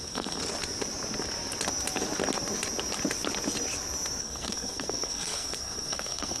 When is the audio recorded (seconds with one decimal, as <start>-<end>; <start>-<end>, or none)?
0.4-4.2